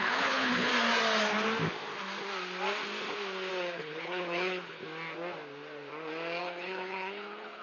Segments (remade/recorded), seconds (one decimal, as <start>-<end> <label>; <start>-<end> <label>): 0.0-0.7 remade; 0.7-3.5 recorded; 3.5-4.8 remade; 4.8-6.4 recorded; 6.4-7.6 remade